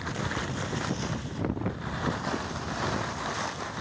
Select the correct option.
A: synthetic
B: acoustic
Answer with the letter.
B